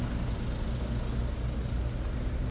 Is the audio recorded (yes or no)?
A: yes